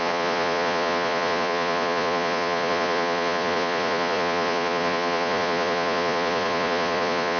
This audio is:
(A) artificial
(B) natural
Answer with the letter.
A